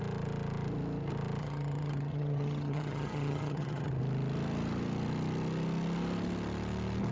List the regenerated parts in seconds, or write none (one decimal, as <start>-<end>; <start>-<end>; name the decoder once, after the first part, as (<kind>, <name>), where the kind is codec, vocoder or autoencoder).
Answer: 1.4-3.9 (vocoder, HiFi-GAN)